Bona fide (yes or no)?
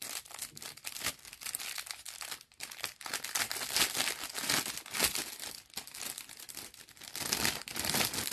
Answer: yes